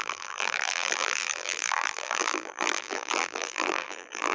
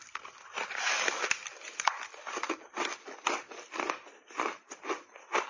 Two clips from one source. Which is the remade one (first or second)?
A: first